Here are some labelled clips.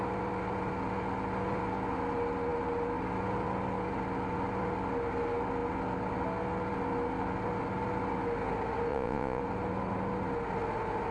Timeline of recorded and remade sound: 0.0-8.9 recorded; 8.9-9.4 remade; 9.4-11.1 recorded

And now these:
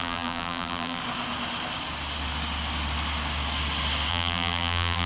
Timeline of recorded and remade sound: 0.0-1.0 remade; 1.0-4.1 recorded; 4.1-5.1 remade

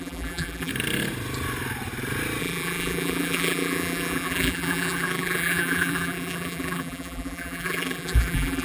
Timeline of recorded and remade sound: 0.0-0.7 remade; 0.7-2.4 recorded; 2.4-8.6 remade

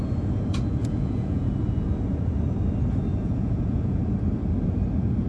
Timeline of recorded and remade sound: 0.0-0.8 recorded; 0.8-1.5 remade; 1.5-3.1 recorded; 3.1-4.0 remade; 4.0-5.3 recorded

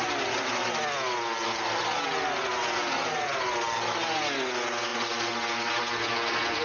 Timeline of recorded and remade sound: 0.0-6.6 recorded